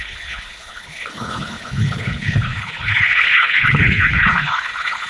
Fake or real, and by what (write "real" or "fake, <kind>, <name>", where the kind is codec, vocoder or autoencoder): fake, codec, HILCodec